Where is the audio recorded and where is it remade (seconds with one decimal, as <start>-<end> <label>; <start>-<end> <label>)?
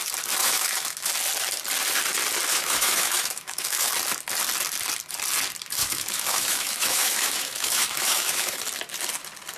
0.0-0.4 recorded; 0.4-1.1 remade; 1.1-2.5 recorded; 2.5-3.9 remade; 3.9-5.8 recorded; 5.8-8.6 remade; 8.6-9.6 recorded